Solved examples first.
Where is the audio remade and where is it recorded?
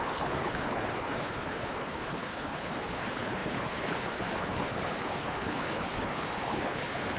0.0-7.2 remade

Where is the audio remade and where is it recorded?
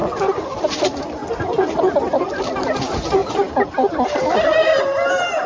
0.0-5.5 recorded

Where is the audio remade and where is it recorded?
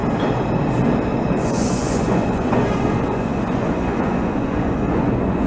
0.0-1.3 recorded; 1.3-5.5 remade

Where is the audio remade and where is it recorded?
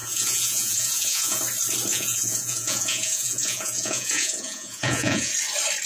0.0-1.4 remade; 1.4-1.9 recorded; 1.9-5.3 remade; 5.3-5.9 recorded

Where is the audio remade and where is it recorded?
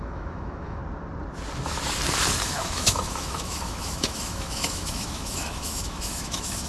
0.0-0.8 remade; 0.8-2.4 recorded; 2.4-6.7 remade